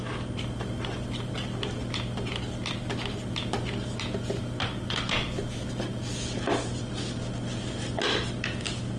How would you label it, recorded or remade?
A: recorded